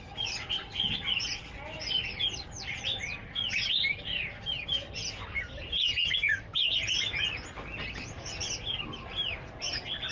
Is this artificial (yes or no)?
no